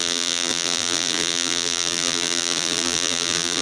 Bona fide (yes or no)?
no